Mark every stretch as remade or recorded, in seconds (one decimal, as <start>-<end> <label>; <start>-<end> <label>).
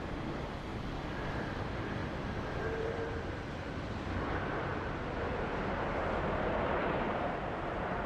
0.0-0.7 remade; 0.7-1.3 recorded; 1.3-2.0 remade; 2.0-2.8 recorded; 2.8-4.7 remade; 4.7-6.8 recorded; 6.8-8.1 remade